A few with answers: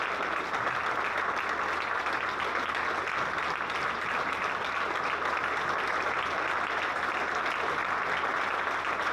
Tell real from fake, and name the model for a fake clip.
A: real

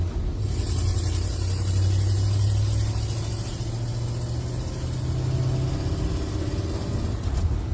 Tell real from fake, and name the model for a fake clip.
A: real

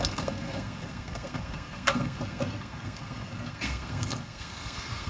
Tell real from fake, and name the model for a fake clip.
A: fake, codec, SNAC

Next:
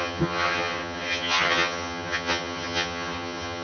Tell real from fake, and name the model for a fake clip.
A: fake, vocoder, HiFi-GAN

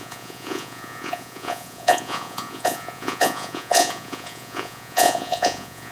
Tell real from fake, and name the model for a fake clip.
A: fake, vocoder, Vocos